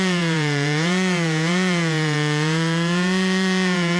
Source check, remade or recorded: remade